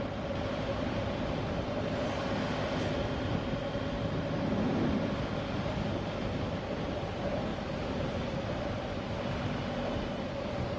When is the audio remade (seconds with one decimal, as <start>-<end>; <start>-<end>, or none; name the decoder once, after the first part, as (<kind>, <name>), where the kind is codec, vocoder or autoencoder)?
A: 7.5-8.2 (vocoder, BigVGAN v2)